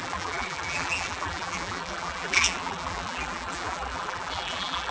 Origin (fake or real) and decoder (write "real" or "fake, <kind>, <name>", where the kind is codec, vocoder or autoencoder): fake, vocoder, BigVGAN v2